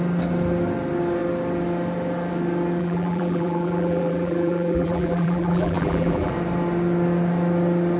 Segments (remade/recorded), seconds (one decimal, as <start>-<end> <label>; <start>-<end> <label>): 0.0-2.8 recorded; 2.8-6.3 remade; 6.3-8.0 recorded